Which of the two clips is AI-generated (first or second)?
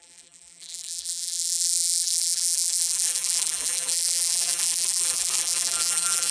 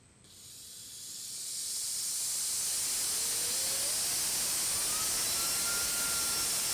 first